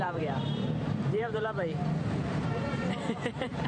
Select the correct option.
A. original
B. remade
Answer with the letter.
B